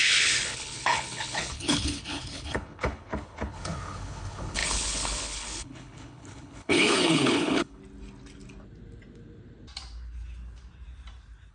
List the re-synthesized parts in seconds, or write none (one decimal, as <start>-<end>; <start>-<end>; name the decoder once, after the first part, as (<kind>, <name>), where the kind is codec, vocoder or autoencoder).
0.0-7.8 (codec, HILCodec)